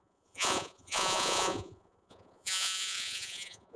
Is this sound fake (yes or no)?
yes